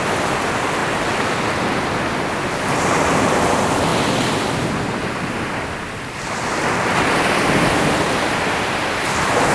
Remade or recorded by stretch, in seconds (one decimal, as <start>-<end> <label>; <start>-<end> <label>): 0.0-9.5 recorded